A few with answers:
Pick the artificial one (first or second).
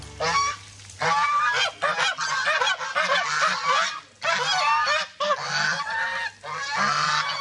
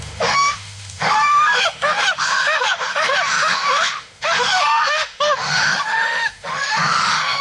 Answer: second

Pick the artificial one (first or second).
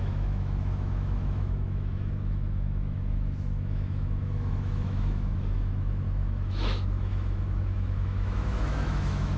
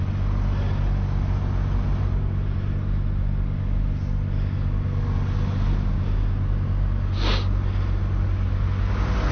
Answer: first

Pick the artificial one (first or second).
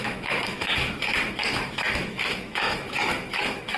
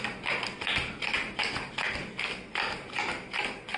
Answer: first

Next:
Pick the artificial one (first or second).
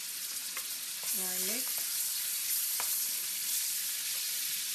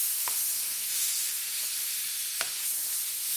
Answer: second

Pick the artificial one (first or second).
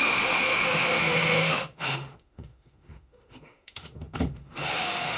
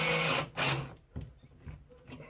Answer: first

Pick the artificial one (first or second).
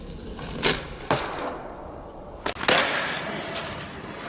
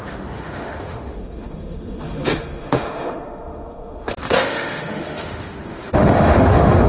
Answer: second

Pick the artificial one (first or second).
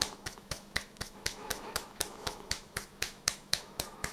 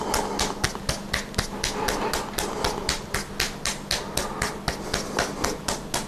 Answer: first